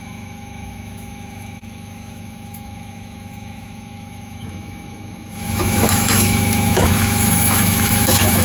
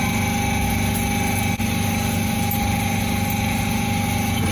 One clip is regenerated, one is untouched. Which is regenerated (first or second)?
first